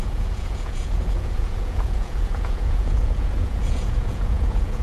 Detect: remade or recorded remade